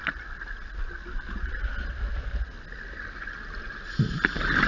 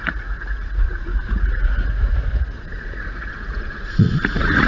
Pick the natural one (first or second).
first